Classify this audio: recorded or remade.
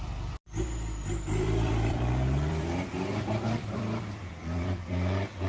remade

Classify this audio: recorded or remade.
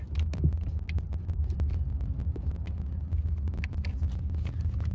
recorded